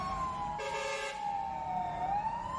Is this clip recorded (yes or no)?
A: yes